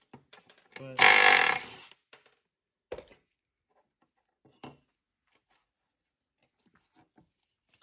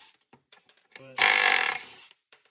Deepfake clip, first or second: second